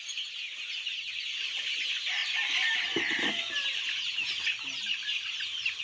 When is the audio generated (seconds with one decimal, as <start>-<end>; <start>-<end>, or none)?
0.0-2.2; 2.7-5.8